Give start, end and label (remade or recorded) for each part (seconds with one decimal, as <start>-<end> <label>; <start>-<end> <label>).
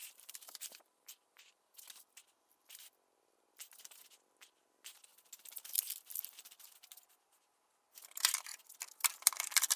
0.0-1.3 remade; 1.3-9.8 recorded